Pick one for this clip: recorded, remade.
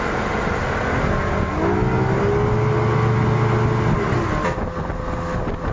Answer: recorded